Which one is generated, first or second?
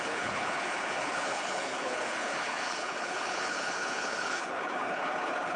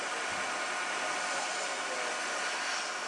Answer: first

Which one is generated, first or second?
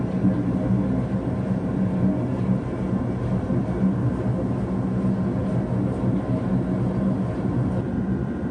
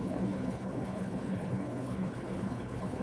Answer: second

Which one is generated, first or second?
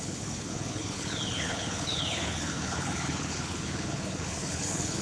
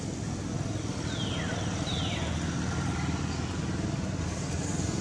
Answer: first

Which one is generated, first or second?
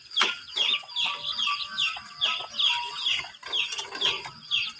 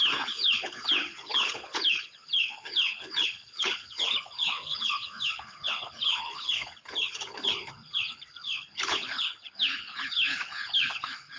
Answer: second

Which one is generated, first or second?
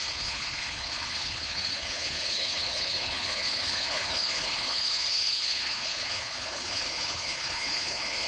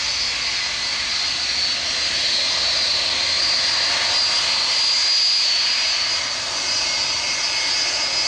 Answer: first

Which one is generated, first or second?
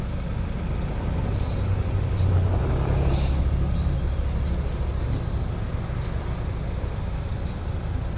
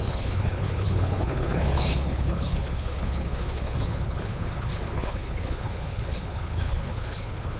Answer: second